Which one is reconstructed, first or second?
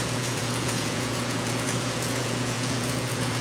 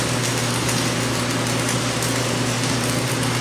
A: first